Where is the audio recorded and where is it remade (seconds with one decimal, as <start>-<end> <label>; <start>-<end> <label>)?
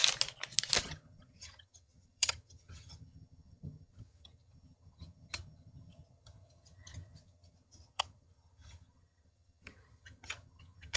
0.0-0.8 recorded; 0.8-11.0 remade